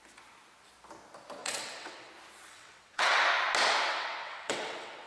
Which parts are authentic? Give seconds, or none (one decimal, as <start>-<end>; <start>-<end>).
0.0-1.4; 2.1-2.5; 3.2-3.9